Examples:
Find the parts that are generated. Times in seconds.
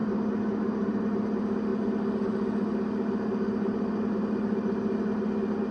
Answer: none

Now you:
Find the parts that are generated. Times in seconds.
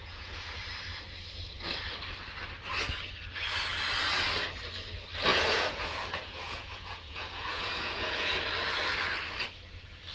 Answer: 0.0-0.6 (vocoder, Vocos); 5.3-8.4